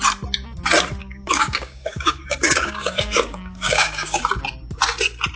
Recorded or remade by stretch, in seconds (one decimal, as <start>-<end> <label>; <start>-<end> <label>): 0.0-1.0 recorded; 1.0-4.2 remade; 4.2-5.4 recorded